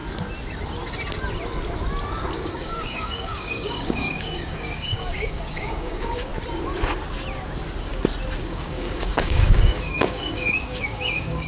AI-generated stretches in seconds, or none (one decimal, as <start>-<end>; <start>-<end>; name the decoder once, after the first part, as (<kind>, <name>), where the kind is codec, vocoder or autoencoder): 2.5-6.3 (codec, DAC); 8.4-11.5